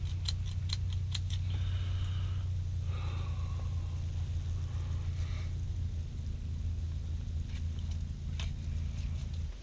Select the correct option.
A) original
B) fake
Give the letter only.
A